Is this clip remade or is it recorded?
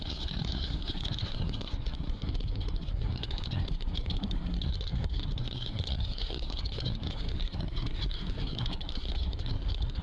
remade